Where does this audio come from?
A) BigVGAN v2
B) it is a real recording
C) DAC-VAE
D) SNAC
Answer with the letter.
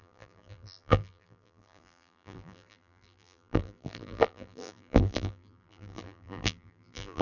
A